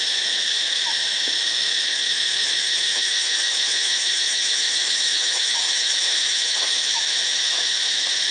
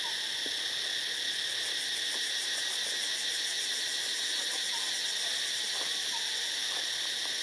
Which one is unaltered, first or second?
second